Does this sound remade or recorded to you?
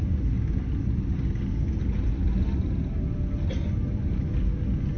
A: recorded